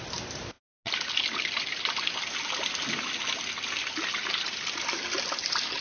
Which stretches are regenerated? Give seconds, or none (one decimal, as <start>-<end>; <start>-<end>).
none